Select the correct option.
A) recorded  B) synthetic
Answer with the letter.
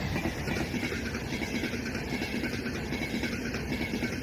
A